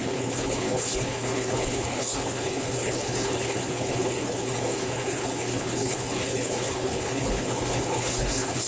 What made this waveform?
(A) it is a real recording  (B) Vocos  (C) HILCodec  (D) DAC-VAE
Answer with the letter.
C